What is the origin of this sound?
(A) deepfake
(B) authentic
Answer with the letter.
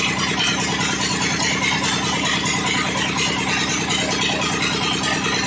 B